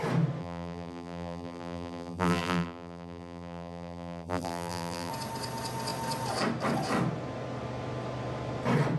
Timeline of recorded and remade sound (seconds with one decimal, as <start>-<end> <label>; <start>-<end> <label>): 0.0-0.4 recorded; 0.4-5.1 remade; 5.1-9.0 recorded